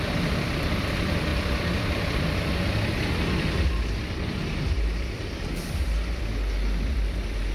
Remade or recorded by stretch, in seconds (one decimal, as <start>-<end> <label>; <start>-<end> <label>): 0.0-1.3 remade; 1.3-4.0 recorded; 4.0-7.5 remade